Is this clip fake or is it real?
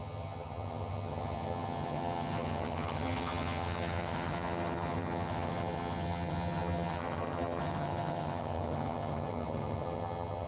fake